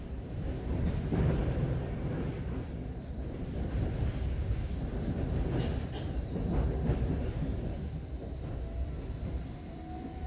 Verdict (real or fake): fake